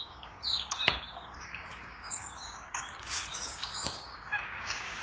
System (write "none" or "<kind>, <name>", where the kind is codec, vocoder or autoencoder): codec, DAC